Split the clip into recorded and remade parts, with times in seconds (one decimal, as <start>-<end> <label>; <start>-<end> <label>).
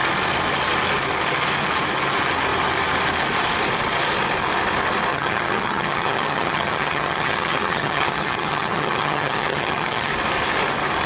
0.0-5.1 recorded; 5.1-10.1 remade; 10.1-11.1 recorded